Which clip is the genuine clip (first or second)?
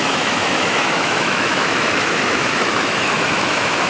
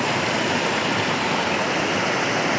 second